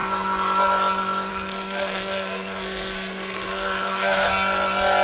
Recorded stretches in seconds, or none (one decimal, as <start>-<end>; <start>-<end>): 0.0-1.3; 4.3-5.0